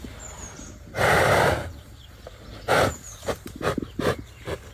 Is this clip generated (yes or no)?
yes